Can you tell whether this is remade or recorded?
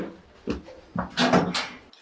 recorded